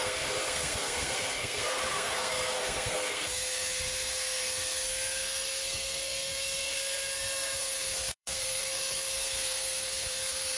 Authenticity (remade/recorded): remade